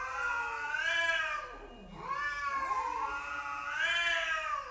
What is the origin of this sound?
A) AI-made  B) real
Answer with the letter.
B